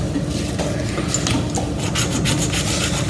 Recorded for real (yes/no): yes